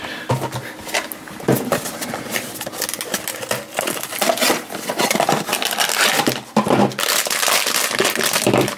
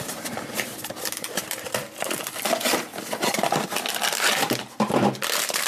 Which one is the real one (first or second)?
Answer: first